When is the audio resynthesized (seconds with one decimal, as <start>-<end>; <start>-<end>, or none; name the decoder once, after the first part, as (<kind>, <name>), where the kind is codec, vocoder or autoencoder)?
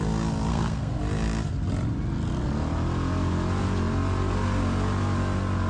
0.5-1.0 (codec, SNAC)